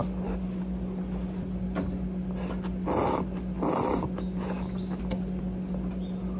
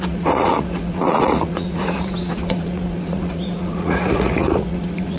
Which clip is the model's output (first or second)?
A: second